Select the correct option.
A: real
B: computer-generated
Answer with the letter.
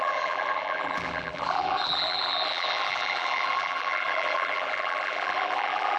B